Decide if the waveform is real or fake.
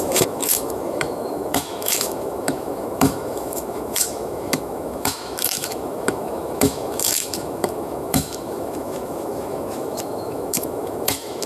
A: fake